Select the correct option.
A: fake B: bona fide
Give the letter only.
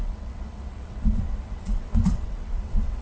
A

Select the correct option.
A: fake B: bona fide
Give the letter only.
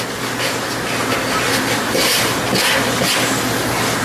B